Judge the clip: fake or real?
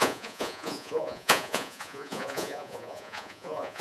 fake